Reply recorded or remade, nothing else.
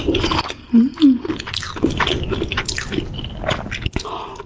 recorded